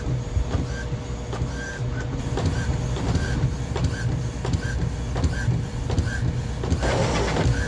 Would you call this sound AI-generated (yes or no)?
no